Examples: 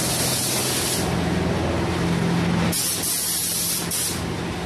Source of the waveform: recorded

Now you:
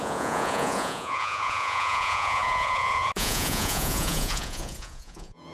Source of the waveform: remade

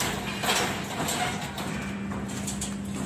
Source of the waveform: recorded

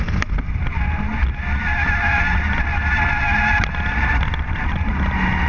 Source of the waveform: recorded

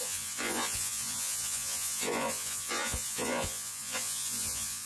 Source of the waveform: remade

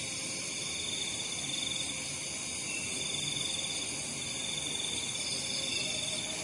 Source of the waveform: recorded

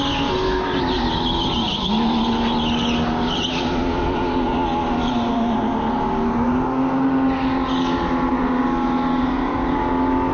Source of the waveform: recorded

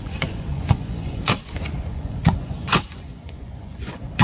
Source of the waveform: remade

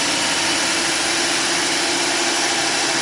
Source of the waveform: recorded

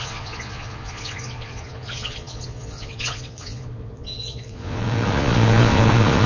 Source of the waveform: remade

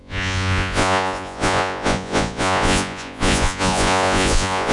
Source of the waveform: remade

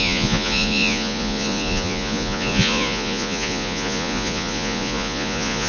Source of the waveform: remade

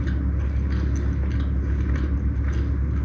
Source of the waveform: recorded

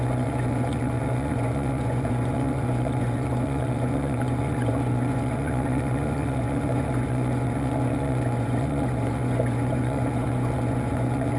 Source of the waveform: remade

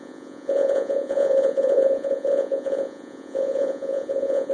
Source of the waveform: remade